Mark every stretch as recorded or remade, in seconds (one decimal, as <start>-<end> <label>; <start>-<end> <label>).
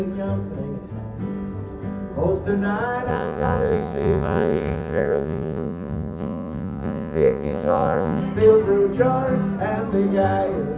0.0-3.1 recorded; 3.1-8.2 remade; 8.2-10.8 recorded